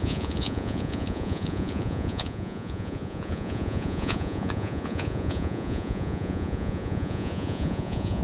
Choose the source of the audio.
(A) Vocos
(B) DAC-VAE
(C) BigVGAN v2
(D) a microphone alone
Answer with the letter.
A